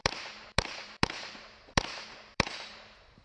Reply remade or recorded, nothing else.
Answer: remade